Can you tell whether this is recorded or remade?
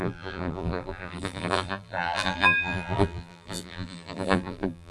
remade